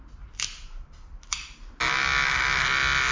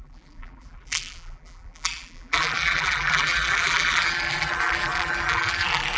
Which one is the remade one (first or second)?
second